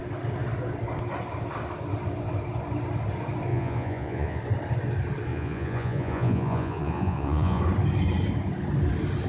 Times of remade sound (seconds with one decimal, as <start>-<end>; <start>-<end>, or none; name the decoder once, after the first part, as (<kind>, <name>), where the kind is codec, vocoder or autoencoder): 3.5-4.4 (vocoder, Vocos); 5.3-7.6